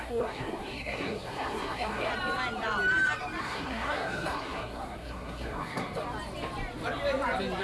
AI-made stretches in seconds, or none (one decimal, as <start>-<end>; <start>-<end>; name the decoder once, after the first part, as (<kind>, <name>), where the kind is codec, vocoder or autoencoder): 0.0-2.1 (codec, SNAC); 3.4-6.0